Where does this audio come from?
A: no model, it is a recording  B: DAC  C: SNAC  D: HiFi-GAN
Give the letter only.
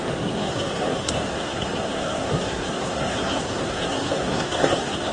C